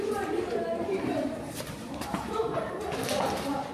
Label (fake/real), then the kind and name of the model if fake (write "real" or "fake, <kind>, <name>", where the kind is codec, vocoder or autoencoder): fake, vocoder, BigVGAN v2